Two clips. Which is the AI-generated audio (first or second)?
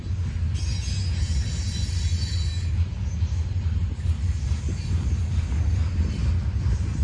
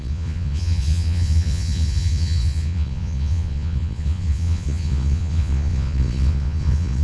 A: second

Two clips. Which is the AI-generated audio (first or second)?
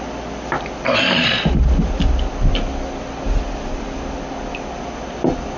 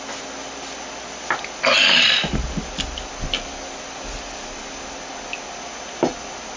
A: first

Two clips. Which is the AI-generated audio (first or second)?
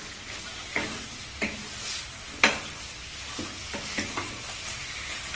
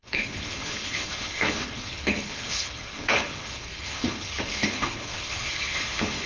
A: second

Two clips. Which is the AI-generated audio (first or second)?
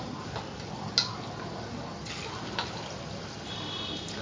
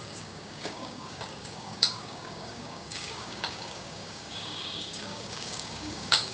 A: second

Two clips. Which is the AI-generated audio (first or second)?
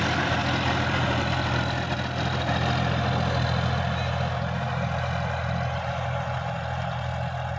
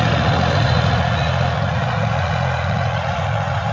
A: second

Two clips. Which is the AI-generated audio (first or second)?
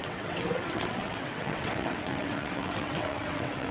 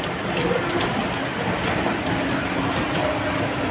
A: first